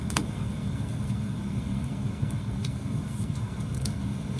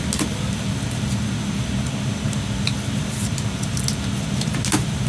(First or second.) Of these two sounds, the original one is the second